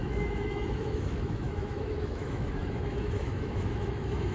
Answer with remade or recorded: remade